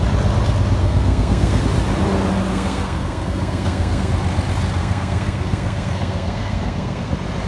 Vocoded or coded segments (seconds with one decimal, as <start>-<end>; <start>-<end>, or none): 0.8-1.6; 2.5-4.1; 4.8-7.1